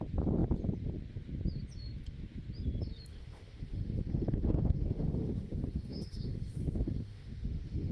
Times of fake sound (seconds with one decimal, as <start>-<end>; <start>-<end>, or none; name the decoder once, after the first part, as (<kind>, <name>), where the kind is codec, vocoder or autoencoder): 3.1-7.9 (autoencoder, DAC-VAE)